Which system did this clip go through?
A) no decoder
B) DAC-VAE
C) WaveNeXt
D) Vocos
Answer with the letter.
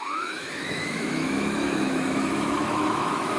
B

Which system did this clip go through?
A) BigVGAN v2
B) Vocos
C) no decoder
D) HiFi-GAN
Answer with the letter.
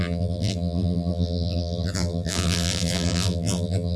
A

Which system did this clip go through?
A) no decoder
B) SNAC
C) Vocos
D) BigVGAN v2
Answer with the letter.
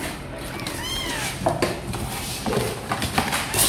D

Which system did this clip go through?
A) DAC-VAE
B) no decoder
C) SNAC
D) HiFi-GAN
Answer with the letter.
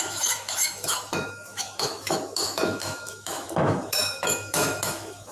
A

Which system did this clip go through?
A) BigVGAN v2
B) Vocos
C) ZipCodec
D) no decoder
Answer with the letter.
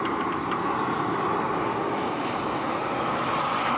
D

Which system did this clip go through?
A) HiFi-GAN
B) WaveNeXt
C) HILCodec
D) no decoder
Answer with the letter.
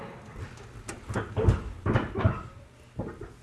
D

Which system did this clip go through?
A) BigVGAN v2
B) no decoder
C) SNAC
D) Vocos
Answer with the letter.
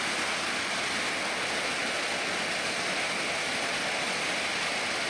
B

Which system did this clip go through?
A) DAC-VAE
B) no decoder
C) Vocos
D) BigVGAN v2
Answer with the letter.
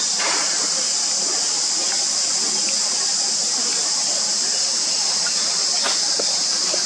B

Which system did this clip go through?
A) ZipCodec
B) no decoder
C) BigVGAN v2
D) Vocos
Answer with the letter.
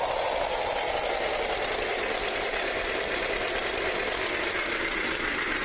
B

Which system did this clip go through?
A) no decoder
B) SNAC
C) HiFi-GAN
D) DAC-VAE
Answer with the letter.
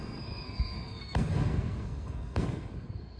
B